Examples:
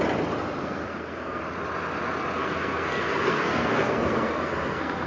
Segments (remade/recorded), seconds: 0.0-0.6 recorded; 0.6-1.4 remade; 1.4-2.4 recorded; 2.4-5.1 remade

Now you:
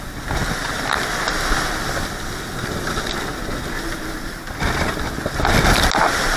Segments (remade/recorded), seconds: 0.0-6.4 recorded

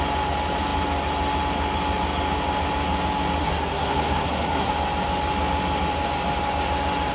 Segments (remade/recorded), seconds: 0.0-3.4 recorded; 3.4-4.7 remade; 4.7-7.1 recorded

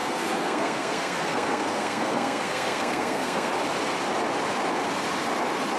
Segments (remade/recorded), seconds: 0.0-3.5 remade; 3.5-5.8 recorded

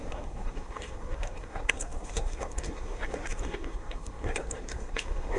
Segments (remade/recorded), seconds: 0.0-5.4 remade

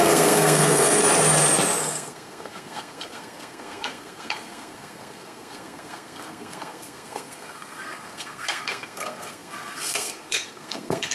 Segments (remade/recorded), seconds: 0.0-1.0 remade; 1.0-1.8 recorded; 1.8-11.1 remade

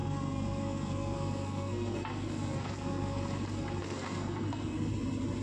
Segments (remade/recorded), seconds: 0.0-3.2 remade; 3.2-3.8 recorded; 3.8-4.9 remade; 4.9-5.4 recorded